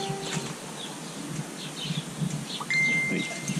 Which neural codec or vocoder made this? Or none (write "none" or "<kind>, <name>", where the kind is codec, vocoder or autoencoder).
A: none